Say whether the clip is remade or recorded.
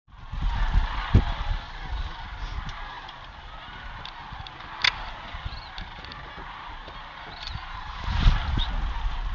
recorded